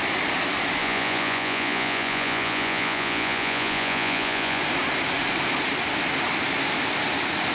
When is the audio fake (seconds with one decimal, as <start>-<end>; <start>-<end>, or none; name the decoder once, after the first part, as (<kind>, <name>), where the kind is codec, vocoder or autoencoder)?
0.8-4.6 (vocoder, Vocos)